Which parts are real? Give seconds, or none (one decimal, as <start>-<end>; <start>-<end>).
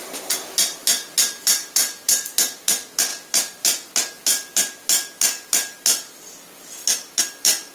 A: 0.0-7.7